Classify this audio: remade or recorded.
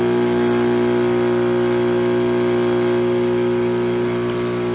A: recorded